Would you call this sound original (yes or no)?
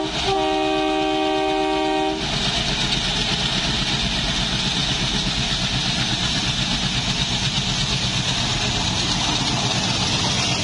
yes